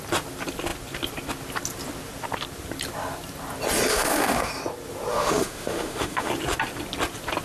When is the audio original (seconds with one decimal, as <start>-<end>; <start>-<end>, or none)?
0.0-3.9; 4.5-5.1; 6.3-7.4